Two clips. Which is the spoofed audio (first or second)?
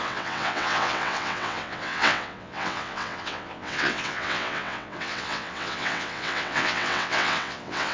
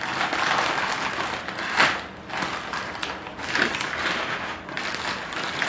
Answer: first